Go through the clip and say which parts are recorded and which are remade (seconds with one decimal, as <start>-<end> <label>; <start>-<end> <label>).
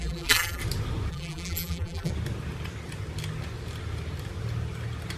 0.0-0.6 remade; 0.6-1.1 recorded; 1.1-2.1 remade; 2.1-5.2 recorded